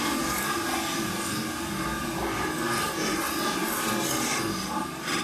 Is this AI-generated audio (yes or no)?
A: no